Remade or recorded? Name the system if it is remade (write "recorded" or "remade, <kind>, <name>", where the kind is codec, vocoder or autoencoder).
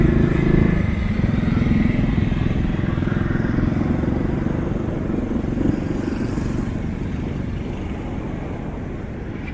recorded